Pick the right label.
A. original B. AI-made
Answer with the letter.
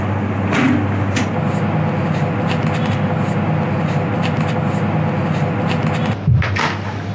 A